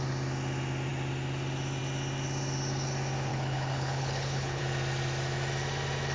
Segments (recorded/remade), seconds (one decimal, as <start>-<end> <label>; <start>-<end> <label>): 0.0-3.3 recorded; 3.3-4.6 remade; 4.6-6.1 recorded